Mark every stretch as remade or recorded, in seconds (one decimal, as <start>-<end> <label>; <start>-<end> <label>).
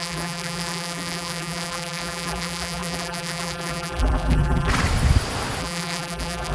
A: 0.0-4.7 remade; 4.7-5.6 recorded; 5.6-6.5 remade